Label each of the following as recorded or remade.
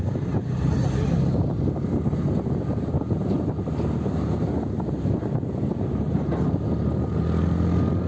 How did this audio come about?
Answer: recorded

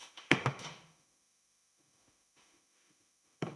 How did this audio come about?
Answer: remade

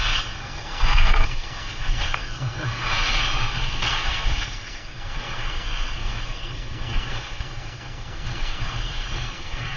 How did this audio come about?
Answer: remade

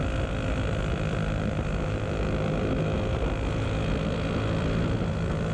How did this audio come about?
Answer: recorded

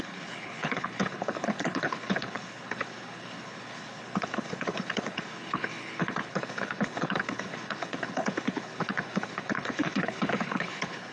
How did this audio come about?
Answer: remade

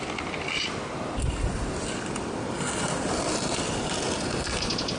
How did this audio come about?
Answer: recorded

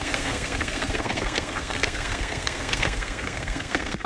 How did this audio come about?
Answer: remade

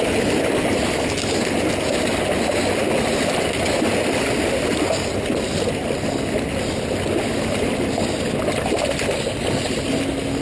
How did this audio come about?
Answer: recorded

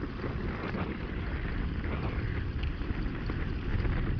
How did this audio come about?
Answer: recorded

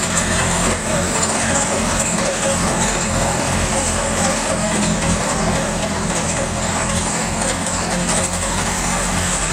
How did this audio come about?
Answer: remade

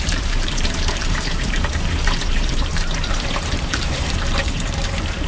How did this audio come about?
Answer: remade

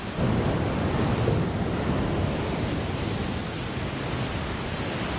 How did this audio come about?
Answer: recorded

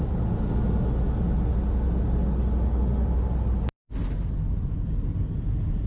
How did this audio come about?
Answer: recorded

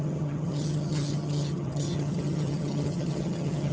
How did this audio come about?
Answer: remade